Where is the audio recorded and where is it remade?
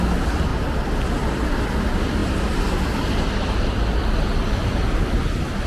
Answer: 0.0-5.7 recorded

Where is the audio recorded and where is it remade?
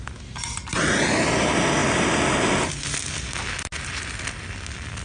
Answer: 0.0-5.0 recorded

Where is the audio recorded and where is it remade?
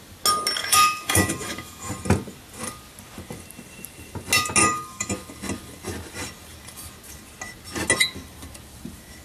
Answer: 0.0-0.6 recorded; 0.6-1.9 remade; 1.9-4.6 recorded; 4.6-5.1 remade; 5.1-9.2 recorded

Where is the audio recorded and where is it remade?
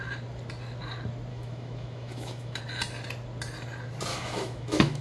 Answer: 0.0-1.3 recorded; 1.3-2.6 remade; 2.6-4.1 recorded; 4.1-5.0 remade